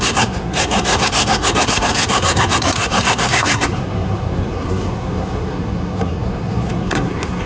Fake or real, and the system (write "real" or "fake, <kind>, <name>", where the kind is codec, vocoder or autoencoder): fake, codec, SNAC